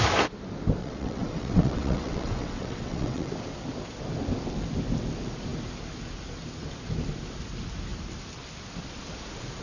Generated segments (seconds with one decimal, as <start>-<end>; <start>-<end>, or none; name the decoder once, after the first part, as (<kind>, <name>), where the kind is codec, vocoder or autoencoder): 0.8-3.3 (vocoder, WaveNeXt)